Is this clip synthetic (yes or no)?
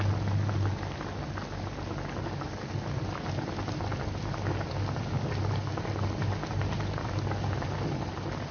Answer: no